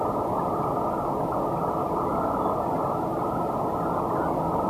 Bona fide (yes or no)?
yes